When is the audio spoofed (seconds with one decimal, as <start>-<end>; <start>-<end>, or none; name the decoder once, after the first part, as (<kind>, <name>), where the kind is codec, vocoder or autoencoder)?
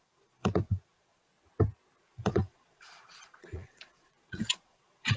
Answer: 0.0-1.3 (vocoder, Vocos); 2.0-5.2